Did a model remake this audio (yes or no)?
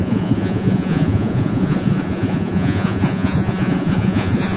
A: yes